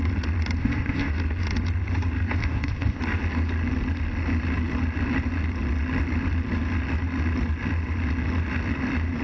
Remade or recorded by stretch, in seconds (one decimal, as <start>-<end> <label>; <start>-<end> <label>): 0.0-0.6 recorded; 0.6-1.1 remade; 1.1-2.4 recorded; 2.4-3.0 remade; 3.0-9.2 recorded